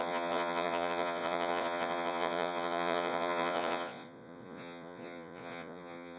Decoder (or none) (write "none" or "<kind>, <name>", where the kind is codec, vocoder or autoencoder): vocoder, Vocos